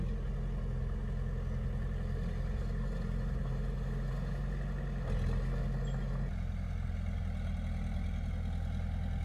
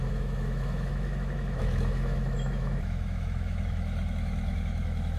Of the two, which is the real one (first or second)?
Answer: first